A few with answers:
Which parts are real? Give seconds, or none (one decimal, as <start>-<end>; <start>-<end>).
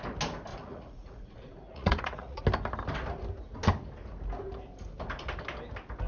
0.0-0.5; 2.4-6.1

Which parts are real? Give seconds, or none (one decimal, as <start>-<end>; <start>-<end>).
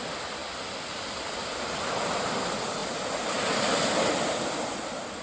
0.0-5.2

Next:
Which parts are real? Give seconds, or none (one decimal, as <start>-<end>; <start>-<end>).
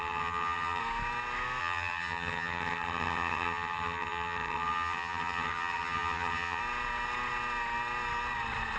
0.8-1.6; 6.6-8.8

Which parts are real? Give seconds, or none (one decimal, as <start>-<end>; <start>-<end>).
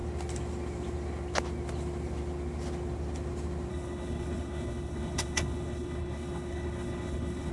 0.0-3.7